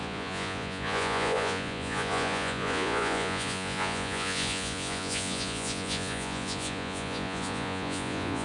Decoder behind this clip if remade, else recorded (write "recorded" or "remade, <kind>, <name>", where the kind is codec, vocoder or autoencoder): remade, vocoder, Vocos